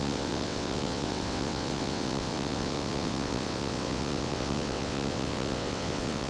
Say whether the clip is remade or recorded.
remade